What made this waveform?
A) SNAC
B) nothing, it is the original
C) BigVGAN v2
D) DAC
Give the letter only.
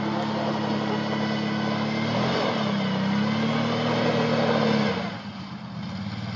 B